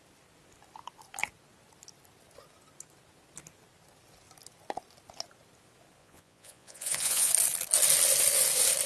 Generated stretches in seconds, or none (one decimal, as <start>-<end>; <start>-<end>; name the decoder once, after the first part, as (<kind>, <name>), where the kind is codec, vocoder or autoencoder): 6.0-7.3 (vocoder, Vocos)